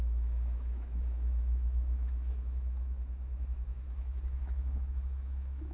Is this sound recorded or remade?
remade